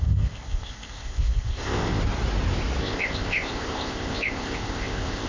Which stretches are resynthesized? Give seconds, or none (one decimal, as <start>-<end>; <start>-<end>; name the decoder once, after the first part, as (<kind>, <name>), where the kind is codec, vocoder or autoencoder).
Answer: 0.0-2.0 (codec, ZipCodec); 2.8-5.3